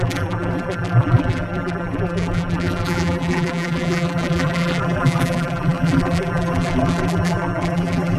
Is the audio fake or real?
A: fake